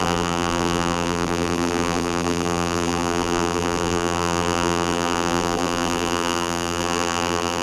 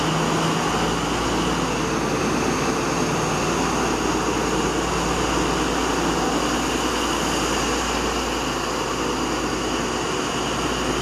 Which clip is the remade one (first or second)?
first